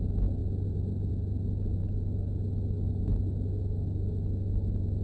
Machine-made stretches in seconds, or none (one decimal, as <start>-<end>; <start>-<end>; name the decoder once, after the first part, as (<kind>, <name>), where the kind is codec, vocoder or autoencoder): 1.8-5.0 (autoencoder, DAC-VAE)